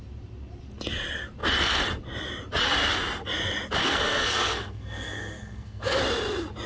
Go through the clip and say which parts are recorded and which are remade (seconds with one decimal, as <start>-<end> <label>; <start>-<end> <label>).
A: 0.0-3.8 recorded; 3.8-6.0 remade; 6.0-6.7 recorded